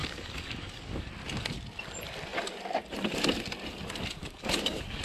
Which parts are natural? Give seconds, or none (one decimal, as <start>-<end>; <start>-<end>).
1.1-4.2